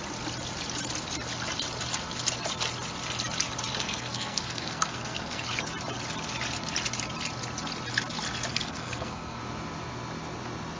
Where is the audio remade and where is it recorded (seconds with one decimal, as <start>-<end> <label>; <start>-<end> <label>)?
0.0-3.7 recorded; 3.7-5.5 remade; 5.5-8.5 recorded; 8.5-9.4 remade; 9.4-10.8 recorded